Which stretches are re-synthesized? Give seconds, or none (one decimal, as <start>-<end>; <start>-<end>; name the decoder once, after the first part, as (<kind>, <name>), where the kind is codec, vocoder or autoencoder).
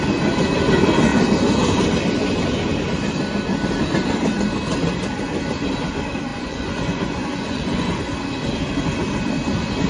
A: 6.3-8.0 (vocoder, Vocos)